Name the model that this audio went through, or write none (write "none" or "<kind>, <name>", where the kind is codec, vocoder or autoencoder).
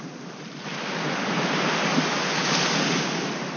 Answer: none